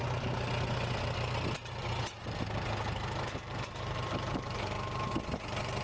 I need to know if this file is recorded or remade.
recorded